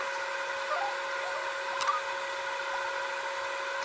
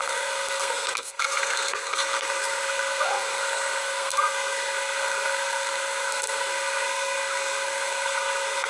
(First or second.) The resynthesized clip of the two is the second